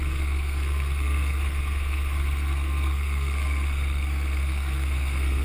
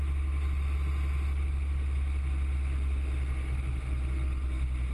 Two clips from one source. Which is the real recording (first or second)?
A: second